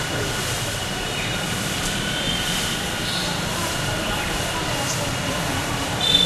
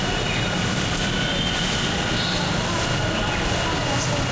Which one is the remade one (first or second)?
first